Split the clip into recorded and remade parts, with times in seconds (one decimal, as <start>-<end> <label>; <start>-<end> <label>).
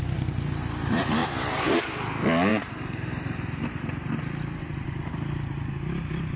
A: 0.0-1.2 recorded; 1.2-1.8 remade; 1.8-2.5 recorded; 2.5-4.2 remade; 4.2-6.4 recorded